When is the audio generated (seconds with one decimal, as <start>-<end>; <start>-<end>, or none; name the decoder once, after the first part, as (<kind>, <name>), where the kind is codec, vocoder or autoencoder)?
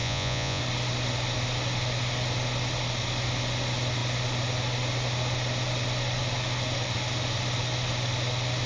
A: 0.0-0.6 (vocoder, Vocos)